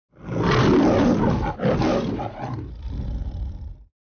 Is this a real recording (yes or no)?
yes